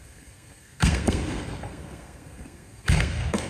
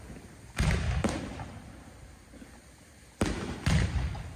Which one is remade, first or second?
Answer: first